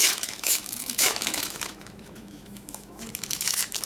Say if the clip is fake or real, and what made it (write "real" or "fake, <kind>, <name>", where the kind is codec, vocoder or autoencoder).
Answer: fake, autoencoder, DAC-VAE